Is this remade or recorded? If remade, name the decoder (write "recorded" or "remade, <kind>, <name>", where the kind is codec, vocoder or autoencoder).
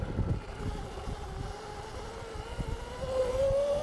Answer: recorded